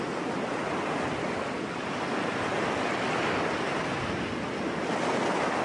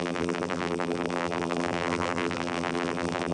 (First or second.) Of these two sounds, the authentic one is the first